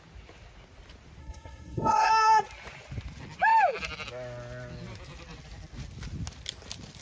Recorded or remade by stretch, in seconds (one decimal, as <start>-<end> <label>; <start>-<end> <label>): 0.0-1.2 recorded; 1.2-2.1 remade; 2.1-7.0 recorded